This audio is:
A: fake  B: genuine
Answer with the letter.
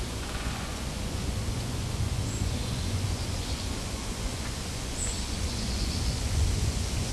A